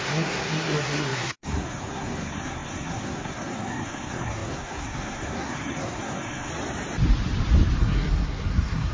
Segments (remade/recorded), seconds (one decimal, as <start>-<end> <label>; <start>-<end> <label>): 0.0-6.5 remade; 6.5-7.8 recorded; 7.8-8.9 remade